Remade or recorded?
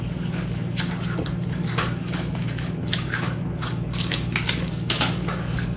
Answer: remade